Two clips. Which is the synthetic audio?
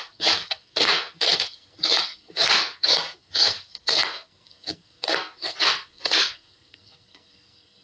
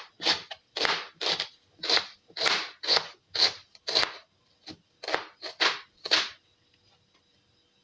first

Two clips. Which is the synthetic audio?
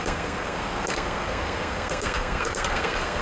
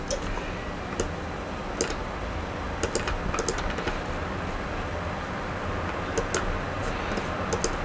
first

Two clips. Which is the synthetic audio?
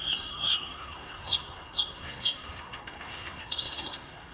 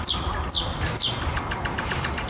first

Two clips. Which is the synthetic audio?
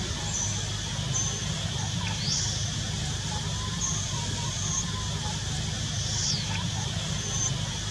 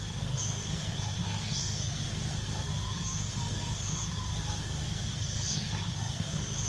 second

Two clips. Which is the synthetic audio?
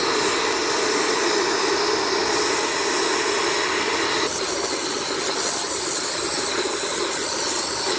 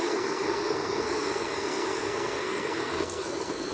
second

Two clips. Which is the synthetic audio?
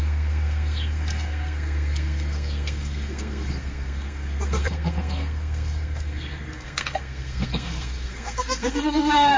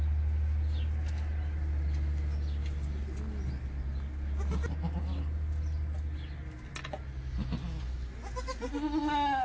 first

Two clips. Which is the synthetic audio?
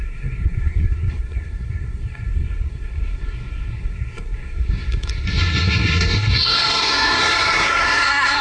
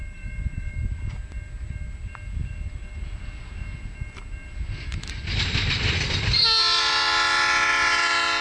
first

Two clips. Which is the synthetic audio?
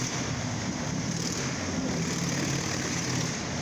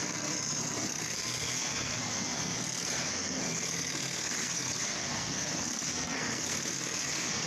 second